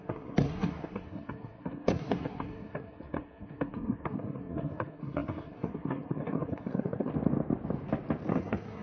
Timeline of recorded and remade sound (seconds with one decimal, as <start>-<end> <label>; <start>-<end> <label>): 0.0-7.1 remade; 7.1-8.3 recorded; 8.3-8.8 remade